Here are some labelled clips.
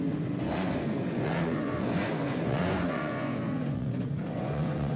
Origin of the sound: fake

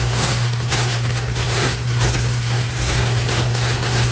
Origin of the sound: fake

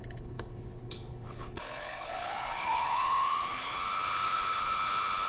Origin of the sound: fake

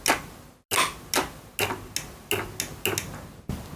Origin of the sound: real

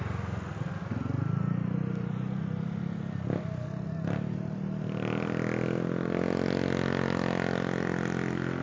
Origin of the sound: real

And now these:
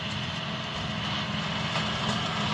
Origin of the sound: real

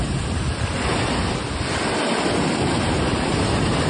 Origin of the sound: real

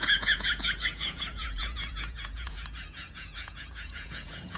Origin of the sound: fake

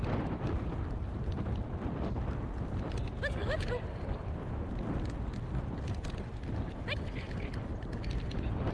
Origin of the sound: real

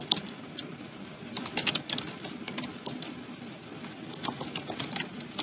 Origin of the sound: real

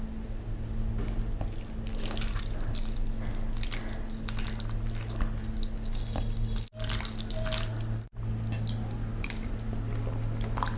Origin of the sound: real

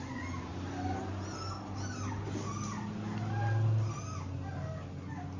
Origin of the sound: real